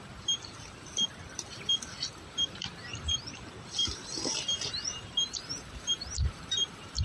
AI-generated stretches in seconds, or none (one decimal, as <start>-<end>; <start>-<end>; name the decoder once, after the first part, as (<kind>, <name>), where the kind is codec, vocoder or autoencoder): 0.0-1.1 (vocoder, BigVGAN v2); 2.3-7.0